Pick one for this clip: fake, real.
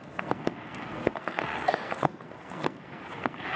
fake